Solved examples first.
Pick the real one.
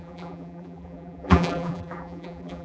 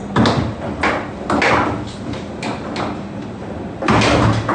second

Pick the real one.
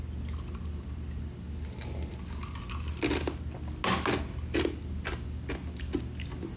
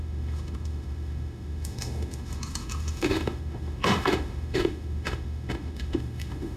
first